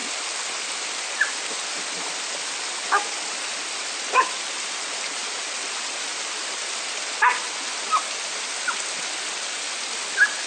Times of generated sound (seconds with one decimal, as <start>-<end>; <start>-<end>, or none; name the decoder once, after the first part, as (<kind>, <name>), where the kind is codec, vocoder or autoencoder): none